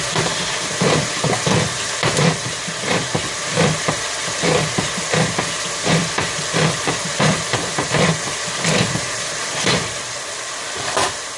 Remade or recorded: remade